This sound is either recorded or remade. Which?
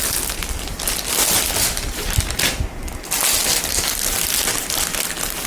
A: recorded